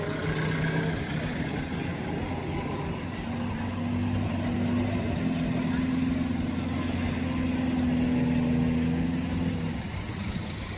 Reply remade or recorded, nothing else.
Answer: recorded